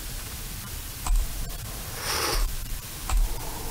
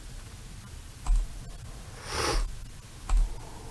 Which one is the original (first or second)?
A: second